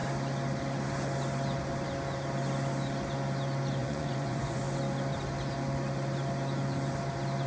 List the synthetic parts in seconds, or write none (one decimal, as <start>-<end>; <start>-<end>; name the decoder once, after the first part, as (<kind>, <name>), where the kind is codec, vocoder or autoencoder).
3.8-4.6 (vocoder, Vocos)